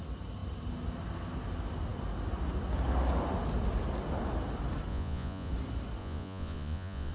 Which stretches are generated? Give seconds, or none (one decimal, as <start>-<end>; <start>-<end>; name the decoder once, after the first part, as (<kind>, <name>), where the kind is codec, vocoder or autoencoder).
4.9-5.5 (vocoder, Vocos); 6.0-7.1